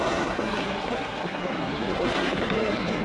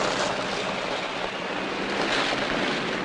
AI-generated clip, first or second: first